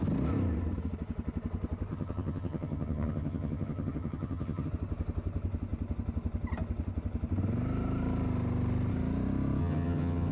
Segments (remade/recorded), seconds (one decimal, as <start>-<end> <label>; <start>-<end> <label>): 0.0-1.9 recorded; 1.9-4.7 remade; 4.7-9.6 recorded; 9.6-10.3 remade